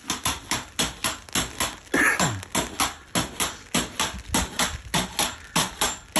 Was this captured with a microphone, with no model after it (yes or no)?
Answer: yes